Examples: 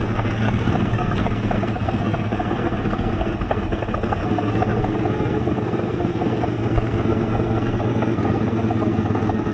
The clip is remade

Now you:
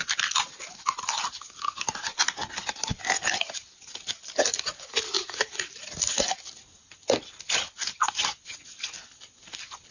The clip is recorded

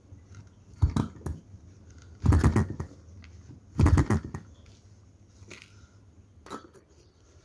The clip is recorded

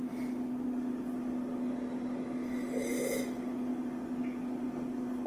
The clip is recorded